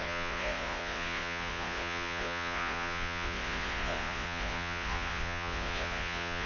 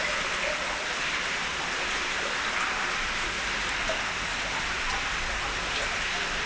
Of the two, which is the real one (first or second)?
second